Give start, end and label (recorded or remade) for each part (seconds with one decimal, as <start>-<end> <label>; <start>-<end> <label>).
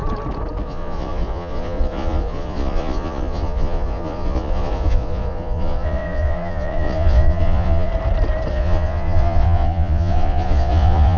0.0-0.6 recorded; 0.6-7.9 remade; 7.9-8.5 recorded; 8.5-11.2 remade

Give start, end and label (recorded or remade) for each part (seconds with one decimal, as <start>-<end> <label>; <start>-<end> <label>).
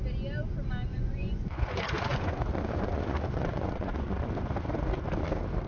0.0-0.9 recorded; 0.9-4.3 remade; 4.3-5.7 recorded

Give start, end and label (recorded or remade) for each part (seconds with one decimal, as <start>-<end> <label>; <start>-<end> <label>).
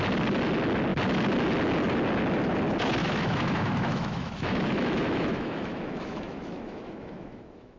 0.0-3.0 recorded; 3.0-7.8 remade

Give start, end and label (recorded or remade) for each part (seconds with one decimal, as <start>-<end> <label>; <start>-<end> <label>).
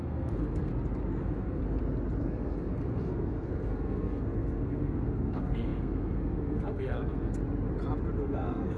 0.0-0.7 remade; 0.7-1.2 recorded; 1.2-1.6 remade; 1.6-2.2 recorded; 2.2-7.4 remade; 7.4-8.2 recorded; 8.2-8.8 remade